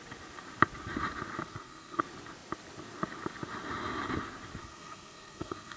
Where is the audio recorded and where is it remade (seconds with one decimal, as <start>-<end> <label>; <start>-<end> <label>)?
0.0-1.4 recorded; 1.4-2.0 remade; 2.0-4.6 recorded; 4.6-5.8 remade